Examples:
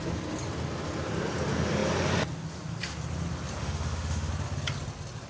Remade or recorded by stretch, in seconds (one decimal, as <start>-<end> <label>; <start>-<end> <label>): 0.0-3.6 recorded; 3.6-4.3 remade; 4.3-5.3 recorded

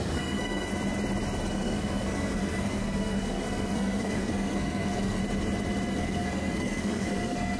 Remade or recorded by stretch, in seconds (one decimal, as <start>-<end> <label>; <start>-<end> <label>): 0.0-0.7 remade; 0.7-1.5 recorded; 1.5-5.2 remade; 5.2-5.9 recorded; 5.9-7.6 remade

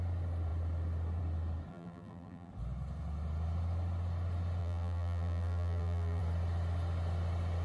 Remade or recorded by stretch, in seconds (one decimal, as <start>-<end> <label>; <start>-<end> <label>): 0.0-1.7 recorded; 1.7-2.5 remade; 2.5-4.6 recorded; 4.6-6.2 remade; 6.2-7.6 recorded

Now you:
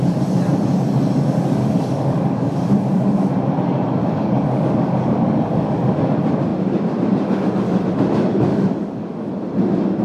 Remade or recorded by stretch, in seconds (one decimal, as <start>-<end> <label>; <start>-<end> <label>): 0.0-1.6 recorded; 1.6-3.3 remade; 3.3-4.0 recorded; 4.0-6.0 remade; 6.0-8.5 recorded; 8.5-9.3 remade; 9.3-10.0 recorded